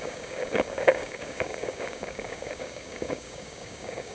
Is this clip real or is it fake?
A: fake